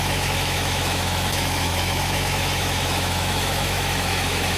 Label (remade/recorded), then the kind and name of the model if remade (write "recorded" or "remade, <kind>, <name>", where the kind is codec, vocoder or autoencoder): remade, autoencoder, DAC-VAE